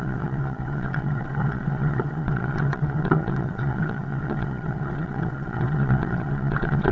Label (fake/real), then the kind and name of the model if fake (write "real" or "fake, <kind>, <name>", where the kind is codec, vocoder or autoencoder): fake, vocoder, WaveNeXt